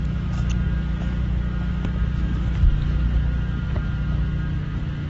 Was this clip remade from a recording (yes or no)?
no